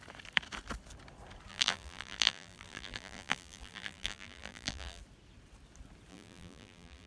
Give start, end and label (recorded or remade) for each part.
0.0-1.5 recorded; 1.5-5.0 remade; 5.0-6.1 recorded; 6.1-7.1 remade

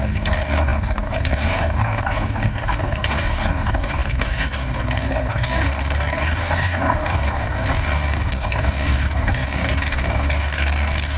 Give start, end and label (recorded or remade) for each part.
0.0-11.2 remade

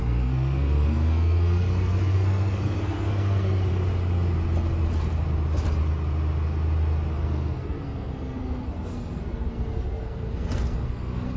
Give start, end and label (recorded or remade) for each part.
0.0-3.7 remade; 3.7-7.1 recorded; 7.1-11.4 remade

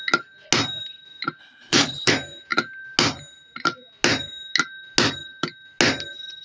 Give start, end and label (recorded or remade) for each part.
0.0-1.4 recorded; 1.4-2.1 remade; 2.1-6.4 recorded

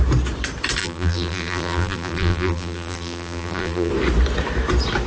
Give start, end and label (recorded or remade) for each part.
0.0-0.8 recorded; 0.8-3.9 remade; 3.9-5.1 recorded

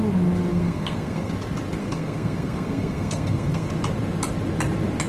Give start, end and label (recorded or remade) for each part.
0.0-0.5 recorded; 0.5-1.3 remade; 1.3-1.8 recorded; 1.8-3.7 remade; 3.7-5.1 recorded

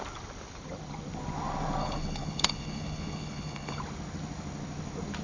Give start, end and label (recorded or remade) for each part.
0.0-1.8 recorded; 1.8-3.8 remade; 3.8-5.2 recorded